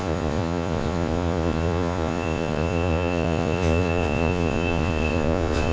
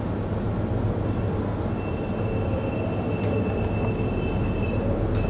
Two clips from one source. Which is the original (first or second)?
second